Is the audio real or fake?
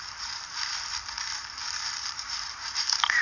fake